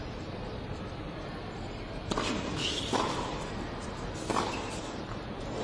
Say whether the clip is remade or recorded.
recorded